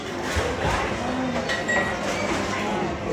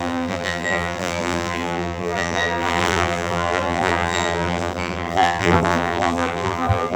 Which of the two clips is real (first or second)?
first